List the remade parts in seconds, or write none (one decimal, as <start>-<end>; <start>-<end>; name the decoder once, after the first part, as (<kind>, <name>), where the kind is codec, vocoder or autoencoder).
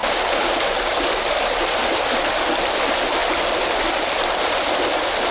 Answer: none